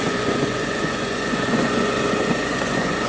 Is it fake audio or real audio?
fake